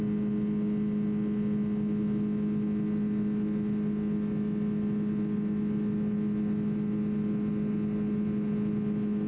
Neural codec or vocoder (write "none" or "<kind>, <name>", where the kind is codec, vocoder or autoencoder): none